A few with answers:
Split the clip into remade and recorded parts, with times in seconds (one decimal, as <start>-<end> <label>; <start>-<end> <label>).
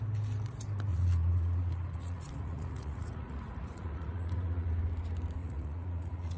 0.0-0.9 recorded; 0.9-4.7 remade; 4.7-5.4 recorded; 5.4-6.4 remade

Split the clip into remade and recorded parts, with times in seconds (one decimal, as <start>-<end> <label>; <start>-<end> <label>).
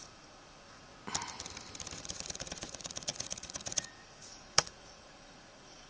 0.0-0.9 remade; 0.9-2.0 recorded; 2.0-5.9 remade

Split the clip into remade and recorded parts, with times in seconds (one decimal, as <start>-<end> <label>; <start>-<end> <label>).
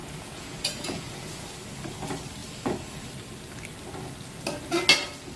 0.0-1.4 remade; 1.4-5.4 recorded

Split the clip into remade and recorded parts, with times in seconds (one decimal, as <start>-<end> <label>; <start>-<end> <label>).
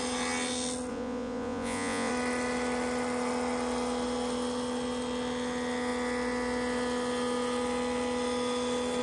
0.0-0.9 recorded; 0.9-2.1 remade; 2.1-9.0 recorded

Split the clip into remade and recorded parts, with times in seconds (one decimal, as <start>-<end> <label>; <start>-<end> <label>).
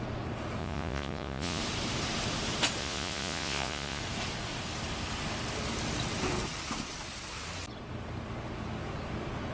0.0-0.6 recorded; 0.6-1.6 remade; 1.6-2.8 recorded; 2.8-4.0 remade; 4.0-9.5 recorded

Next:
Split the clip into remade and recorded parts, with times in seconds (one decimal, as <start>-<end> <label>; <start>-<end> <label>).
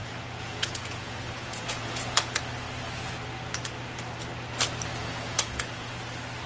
0.0-2.4 remade; 2.4-5.0 recorded; 5.0-5.9 remade; 5.9-6.5 recorded